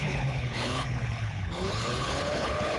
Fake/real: fake